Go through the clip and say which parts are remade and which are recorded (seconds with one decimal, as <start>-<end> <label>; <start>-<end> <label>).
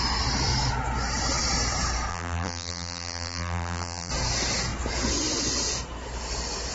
0.0-2.1 recorded; 2.1-4.1 remade; 4.1-6.7 recorded